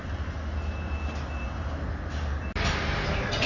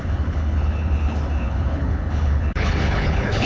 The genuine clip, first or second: first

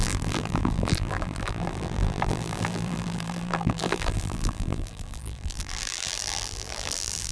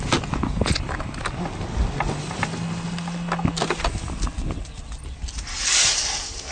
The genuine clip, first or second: second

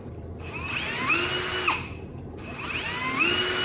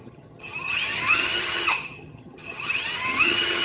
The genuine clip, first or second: first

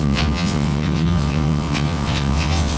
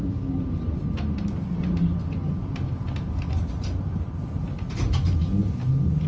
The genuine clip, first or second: second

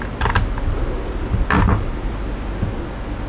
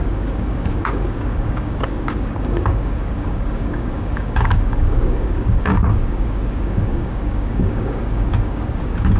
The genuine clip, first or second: first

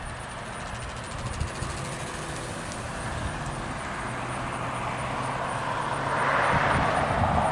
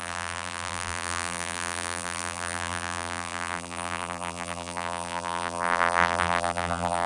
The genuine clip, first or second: first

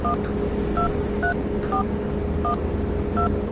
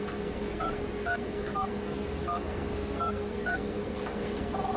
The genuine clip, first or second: first